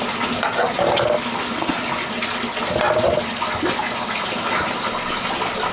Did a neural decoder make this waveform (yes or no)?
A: no